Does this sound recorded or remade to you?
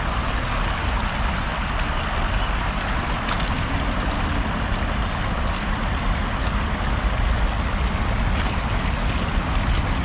recorded